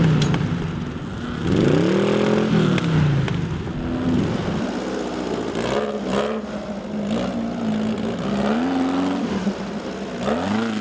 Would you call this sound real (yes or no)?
yes